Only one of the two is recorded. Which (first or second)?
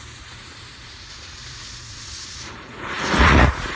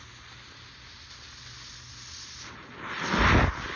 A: second